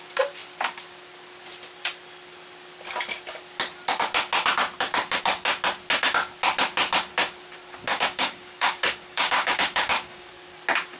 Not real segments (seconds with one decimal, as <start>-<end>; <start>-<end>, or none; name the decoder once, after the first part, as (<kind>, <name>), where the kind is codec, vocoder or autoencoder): 7.9-10.3 (codec, DAC)